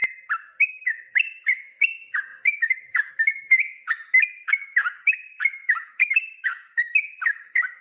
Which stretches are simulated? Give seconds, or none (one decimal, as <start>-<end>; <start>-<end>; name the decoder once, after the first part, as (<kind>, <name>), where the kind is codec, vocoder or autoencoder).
0.7-7.8 (autoencoder, DAC-VAE)